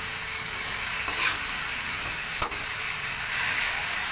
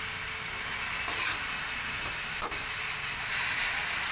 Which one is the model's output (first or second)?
first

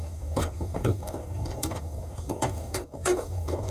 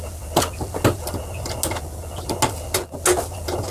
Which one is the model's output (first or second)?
first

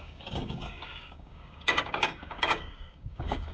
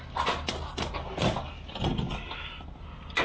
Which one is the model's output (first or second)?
first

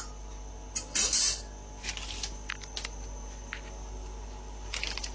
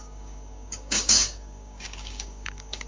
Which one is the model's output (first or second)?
second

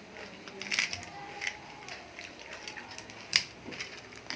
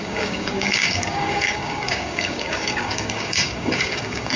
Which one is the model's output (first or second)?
second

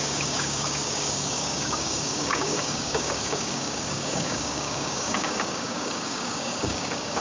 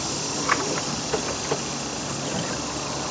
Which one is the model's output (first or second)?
first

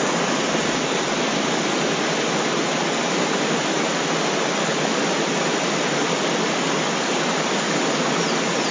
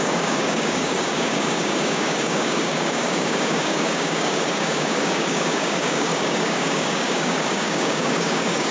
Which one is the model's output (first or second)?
second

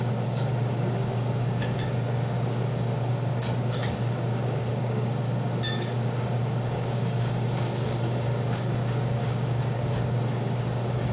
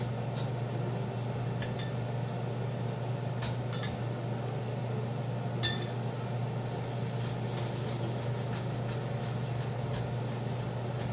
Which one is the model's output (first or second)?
first